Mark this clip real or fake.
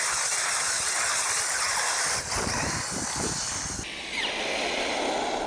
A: real